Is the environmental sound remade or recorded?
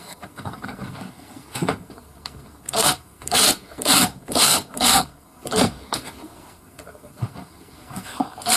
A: remade